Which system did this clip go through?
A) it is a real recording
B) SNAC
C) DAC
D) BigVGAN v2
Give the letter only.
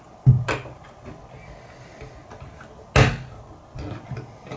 A